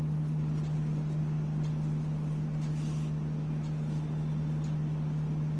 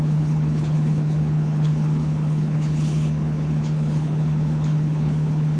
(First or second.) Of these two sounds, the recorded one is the first